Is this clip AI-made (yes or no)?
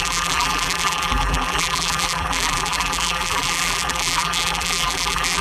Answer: yes